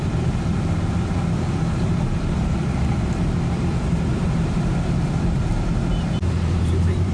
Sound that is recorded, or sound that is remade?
remade